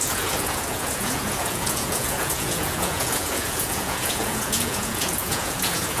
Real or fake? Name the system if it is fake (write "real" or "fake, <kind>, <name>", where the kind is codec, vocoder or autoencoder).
fake, vocoder, Vocos